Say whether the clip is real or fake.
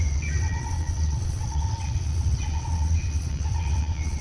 fake